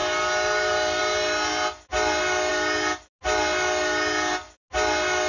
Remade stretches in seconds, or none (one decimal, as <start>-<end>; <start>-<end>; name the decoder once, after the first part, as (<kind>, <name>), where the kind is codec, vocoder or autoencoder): none